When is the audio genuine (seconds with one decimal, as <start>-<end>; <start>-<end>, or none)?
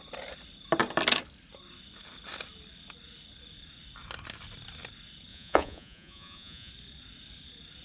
0.0-5.3; 6.7-7.8